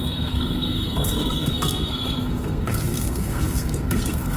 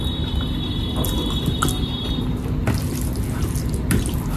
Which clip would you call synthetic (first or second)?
first